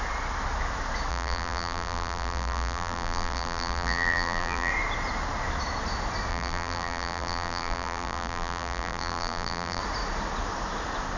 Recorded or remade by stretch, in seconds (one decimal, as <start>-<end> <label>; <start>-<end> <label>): 0.0-1.1 recorded; 1.1-4.7 remade; 4.7-6.3 recorded; 6.3-9.8 remade; 9.8-11.2 recorded

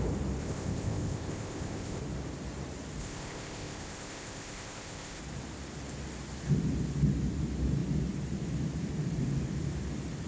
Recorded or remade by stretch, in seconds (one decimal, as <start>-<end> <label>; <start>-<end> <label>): 0.0-0.4 recorded; 0.4-2.0 remade; 2.0-3.0 recorded; 3.0-5.2 remade; 5.2-10.3 recorded